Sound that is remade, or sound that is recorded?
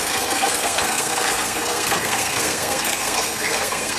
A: remade